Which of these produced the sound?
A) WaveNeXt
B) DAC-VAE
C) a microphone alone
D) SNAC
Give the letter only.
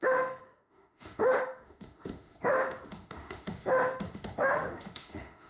B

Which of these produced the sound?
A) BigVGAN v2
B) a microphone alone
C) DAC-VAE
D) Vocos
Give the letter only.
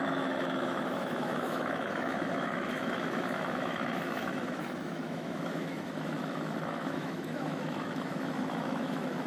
C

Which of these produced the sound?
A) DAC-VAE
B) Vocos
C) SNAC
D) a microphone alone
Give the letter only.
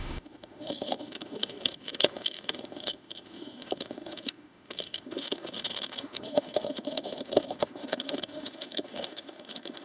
A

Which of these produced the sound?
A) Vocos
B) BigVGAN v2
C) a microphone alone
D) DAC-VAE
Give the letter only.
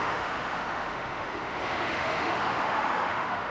D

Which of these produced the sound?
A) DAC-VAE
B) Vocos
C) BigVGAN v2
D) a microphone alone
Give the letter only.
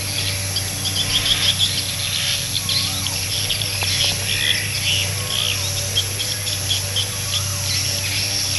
D